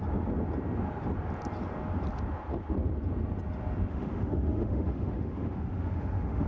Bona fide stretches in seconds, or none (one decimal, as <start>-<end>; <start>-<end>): 0.0-3.9